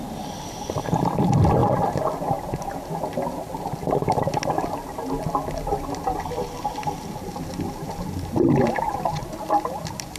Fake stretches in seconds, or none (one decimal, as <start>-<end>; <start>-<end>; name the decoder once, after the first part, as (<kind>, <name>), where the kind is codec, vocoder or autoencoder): none